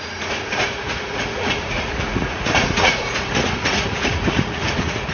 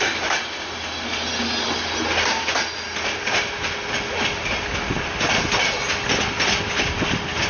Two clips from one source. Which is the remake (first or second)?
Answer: first